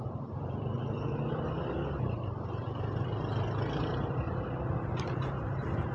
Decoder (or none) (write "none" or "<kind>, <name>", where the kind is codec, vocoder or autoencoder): vocoder, BigVGAN v2